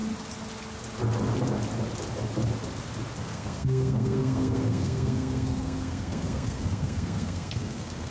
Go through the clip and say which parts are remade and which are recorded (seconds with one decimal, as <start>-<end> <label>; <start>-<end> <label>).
0.0-3.2 recorded; 3.2-8.1 remade